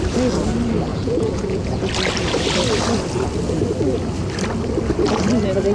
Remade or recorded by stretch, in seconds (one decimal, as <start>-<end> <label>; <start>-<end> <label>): 0.0-0.9 recorded; 0.9-1.8 remade; 1.8-5.7 recorded